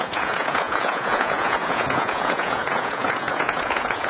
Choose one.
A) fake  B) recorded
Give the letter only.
A